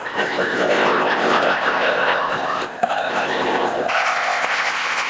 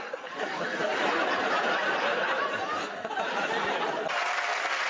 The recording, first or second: second